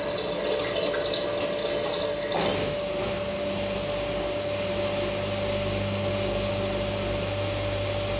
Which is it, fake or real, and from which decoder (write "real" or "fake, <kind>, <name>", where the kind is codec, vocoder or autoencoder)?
real